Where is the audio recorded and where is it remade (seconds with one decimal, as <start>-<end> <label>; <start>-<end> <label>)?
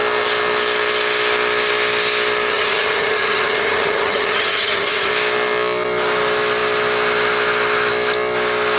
0.0-2.5 recorded; 2.5-5.1 remade; 5.1-8.8 recorded